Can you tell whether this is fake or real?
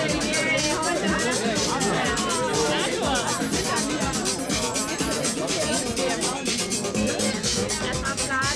real